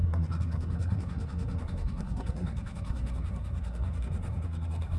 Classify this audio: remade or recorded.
remade